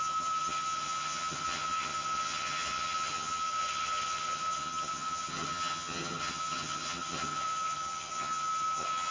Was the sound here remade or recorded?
remade